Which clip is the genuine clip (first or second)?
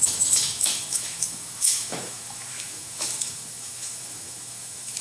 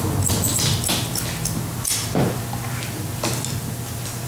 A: second